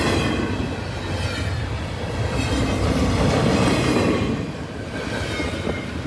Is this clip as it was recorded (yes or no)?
yes